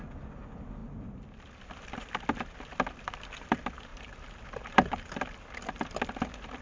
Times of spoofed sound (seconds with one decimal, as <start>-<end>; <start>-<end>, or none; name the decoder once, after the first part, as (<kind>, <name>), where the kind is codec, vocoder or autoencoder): 3.9-5.2 (vocoder, BigVGAN v2)